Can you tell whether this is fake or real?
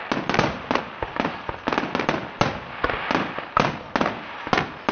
real